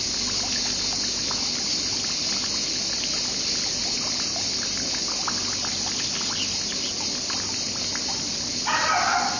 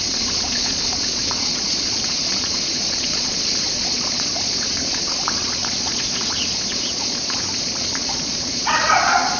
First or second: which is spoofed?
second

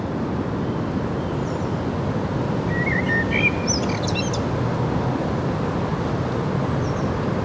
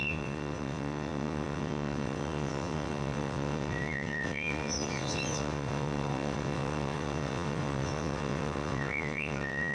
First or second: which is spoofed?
second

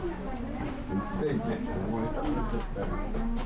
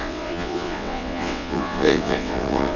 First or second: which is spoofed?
second